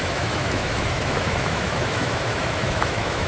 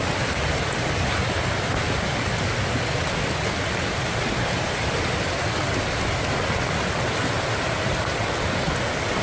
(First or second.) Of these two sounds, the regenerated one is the first